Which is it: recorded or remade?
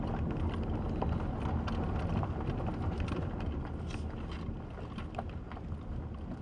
recorded